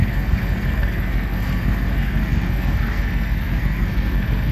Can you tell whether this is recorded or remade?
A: remade